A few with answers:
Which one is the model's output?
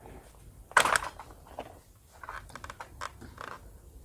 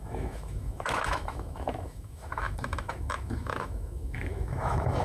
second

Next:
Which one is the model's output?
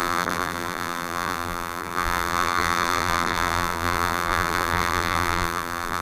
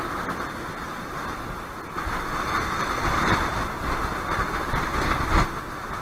first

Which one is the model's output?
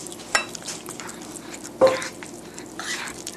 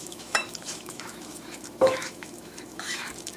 second